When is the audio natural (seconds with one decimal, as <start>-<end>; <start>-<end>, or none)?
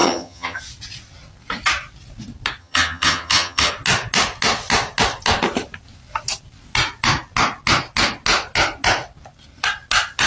0.6-2.6; 3.7-10.3